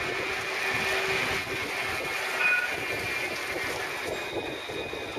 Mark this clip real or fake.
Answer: real